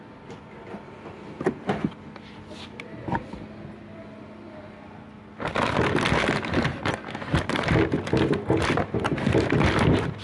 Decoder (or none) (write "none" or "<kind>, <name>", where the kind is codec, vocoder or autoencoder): none